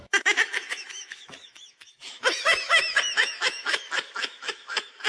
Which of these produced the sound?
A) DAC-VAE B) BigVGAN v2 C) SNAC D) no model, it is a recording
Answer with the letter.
A